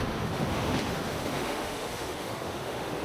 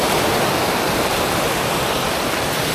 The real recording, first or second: second